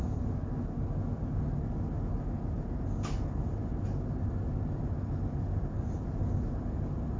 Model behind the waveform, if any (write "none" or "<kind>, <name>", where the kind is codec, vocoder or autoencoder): none